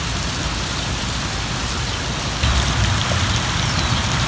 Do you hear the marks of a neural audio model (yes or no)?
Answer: yes